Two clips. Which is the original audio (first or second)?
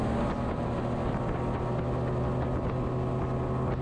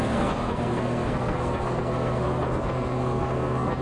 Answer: first